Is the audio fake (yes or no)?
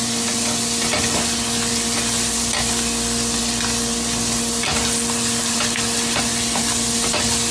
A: no